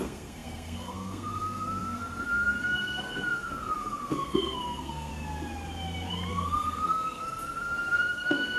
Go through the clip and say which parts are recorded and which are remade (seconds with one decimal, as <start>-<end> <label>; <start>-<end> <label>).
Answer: 0.0-5.1 remade; 5.1-6.3 recorded; 6.3-8.6 remade